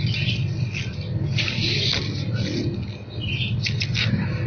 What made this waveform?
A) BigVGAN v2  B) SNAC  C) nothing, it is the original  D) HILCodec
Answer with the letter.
C